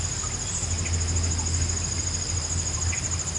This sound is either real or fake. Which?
real